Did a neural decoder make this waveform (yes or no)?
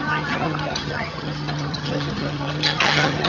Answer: yes